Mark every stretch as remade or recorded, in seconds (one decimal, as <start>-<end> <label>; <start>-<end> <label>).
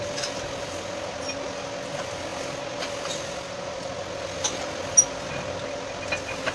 0.0-6.5 recorded